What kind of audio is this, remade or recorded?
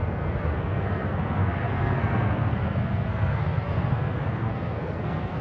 remade